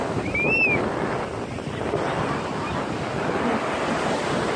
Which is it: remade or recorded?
recorded